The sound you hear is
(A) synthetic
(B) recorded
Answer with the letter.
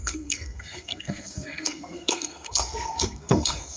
A